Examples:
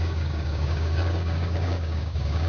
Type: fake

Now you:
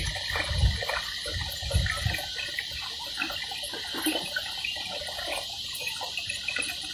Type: fake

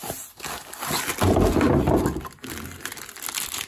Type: real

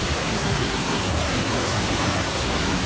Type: fake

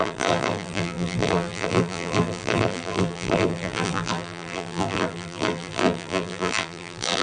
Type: fake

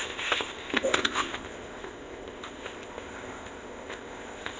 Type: fake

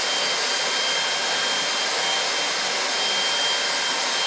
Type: real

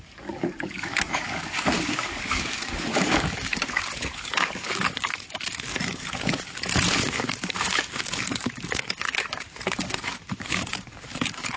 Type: fake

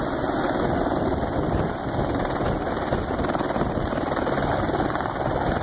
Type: fake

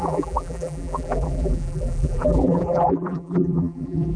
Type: fake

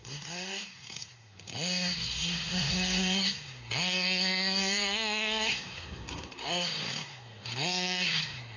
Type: fake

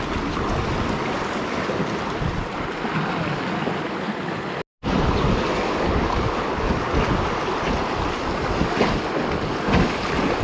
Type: real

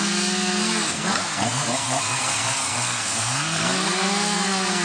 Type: fake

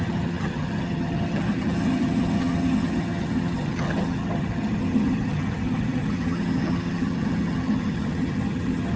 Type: fake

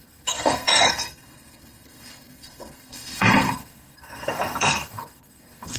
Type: fake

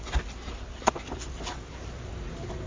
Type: real